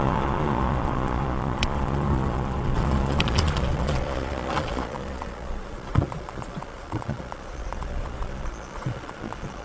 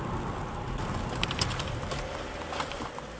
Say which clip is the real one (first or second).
second